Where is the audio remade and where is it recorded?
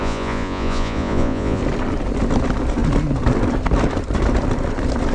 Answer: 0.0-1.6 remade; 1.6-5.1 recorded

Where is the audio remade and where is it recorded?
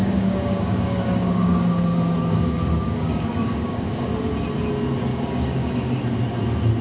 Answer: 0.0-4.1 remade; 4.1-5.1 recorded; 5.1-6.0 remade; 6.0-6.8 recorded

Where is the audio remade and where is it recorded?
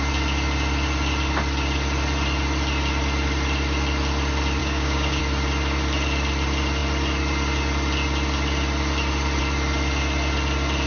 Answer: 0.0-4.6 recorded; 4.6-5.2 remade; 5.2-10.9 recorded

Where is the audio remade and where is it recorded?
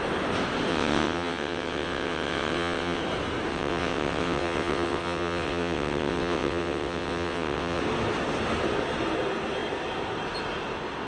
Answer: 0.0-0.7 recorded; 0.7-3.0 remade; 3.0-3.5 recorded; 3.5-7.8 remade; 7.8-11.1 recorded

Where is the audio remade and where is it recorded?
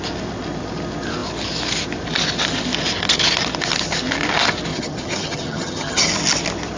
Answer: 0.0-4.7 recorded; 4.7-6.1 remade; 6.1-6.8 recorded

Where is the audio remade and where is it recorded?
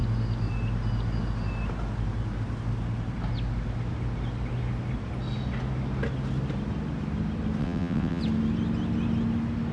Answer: 0.0-7.6 recorded; 7.6-8.2 remade; 8.2-9.7 recorded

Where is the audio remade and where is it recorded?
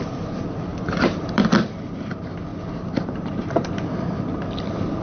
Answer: 0.0-0.7 recorded; 0.7-1.3 remade; 1.3-2.5 recorded; 2.5-3.7 remade; 3.7-5.0 recorded